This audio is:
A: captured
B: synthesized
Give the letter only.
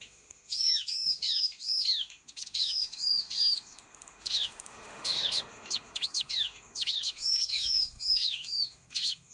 B